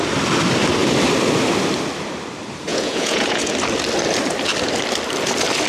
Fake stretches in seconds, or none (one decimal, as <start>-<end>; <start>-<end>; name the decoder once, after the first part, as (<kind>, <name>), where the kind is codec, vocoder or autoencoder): 2.7-3.5 (vocoder, Vocos)